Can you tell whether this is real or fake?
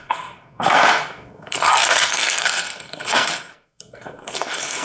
fake